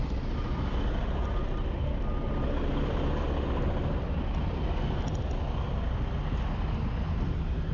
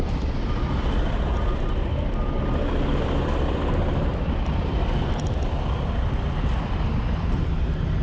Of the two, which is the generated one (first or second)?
second